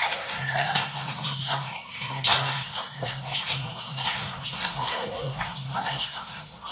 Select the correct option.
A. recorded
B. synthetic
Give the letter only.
B